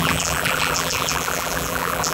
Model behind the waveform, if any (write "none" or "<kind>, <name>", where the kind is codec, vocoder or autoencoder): vocoder, BigVGAN v2